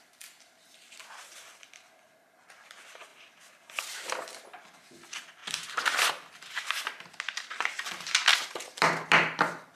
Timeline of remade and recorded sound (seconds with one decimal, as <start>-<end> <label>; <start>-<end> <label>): 0.0-9.8 recorded